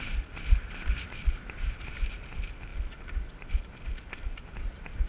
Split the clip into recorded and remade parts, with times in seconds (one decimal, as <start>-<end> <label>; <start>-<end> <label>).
0.0-5.1 recorded